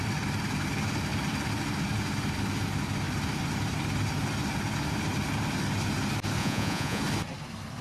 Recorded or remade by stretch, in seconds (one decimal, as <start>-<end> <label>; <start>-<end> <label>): 0.0-6.4 recorded; 6.4-7.0 remade; 7.0-7.8 recorded